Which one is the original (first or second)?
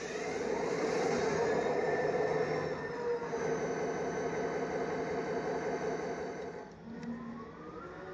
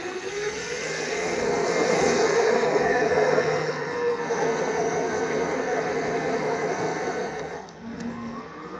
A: first